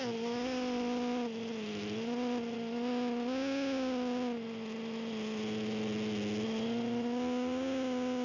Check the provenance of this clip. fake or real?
real